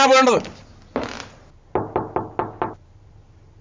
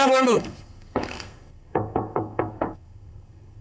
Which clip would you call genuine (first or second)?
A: first